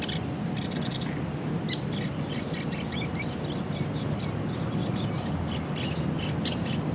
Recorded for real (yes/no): yes